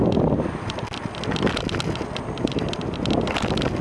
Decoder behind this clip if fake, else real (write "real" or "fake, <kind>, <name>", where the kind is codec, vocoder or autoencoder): real